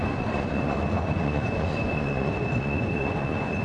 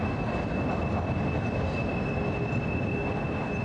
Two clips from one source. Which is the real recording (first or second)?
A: second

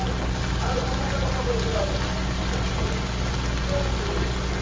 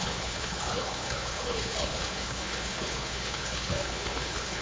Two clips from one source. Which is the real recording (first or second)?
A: first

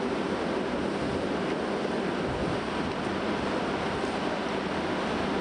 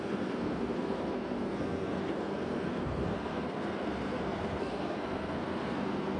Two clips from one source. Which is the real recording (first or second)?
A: first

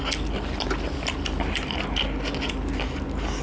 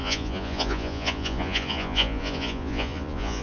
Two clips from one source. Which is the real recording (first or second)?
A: first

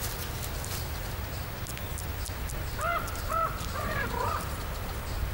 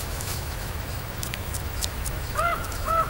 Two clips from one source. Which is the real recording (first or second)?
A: first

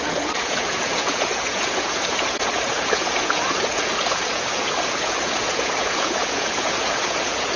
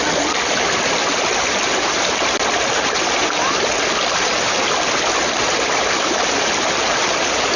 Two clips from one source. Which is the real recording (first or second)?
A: second